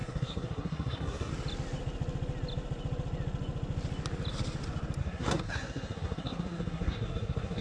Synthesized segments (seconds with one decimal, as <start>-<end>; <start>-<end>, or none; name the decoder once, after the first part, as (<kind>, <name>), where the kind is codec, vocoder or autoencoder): 0.0-1.3 (codec, SNAC); 5.0-7.6